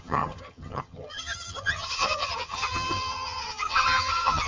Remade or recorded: remade